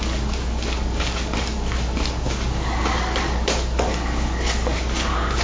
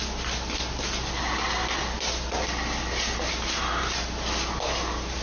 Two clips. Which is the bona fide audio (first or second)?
second